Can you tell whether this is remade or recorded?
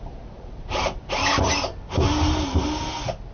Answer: recorded